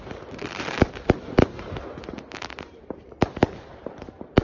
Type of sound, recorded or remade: remade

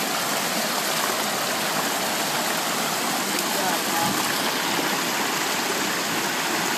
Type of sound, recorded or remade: recorded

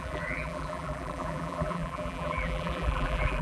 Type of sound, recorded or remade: remade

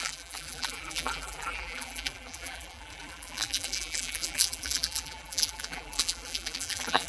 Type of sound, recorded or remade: remade